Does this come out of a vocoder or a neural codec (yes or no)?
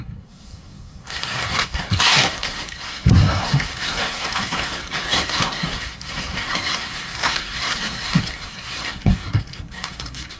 yes